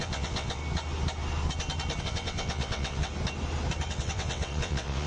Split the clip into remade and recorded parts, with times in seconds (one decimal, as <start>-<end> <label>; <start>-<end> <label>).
0.0-0.6 remade; 0.6-2.0 recorded; 2.0-3.1 remade; 3.1-3.9 recorded; 3.9-5.1 remade